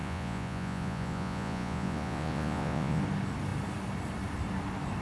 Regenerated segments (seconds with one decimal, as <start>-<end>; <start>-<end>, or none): 0.0-3.0